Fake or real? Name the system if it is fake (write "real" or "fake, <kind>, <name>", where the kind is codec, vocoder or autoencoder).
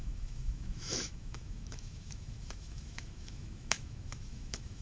fake, autoencoder, DAC-VAE